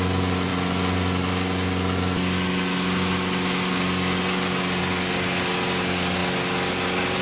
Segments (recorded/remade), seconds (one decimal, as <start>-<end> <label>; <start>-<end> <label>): 0.0-7.2 recorded